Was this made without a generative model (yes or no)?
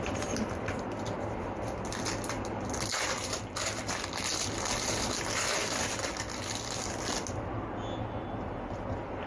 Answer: yes